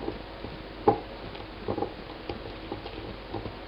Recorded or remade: recorded